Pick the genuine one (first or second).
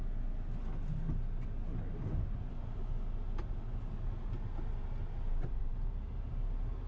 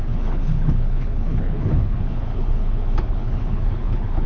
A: first